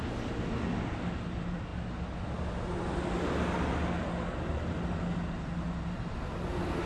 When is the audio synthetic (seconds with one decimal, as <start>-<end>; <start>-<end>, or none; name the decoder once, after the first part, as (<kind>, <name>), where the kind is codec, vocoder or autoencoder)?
none